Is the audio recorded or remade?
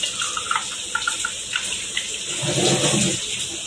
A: recorded